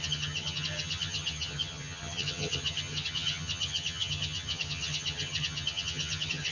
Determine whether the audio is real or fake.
fake